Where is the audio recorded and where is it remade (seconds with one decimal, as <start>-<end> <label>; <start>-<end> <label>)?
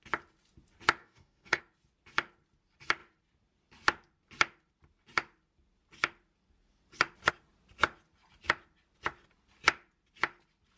0.0-1.0 recorded; 1.0-1.6 remade; 1.6-10.8 recorded